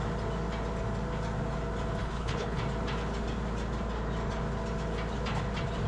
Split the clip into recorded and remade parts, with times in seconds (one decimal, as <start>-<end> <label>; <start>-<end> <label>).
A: 0.0-2.0 recorded; 2.0-2.6 remade; 2.6-5.9 recorded